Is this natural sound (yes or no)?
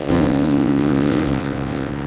no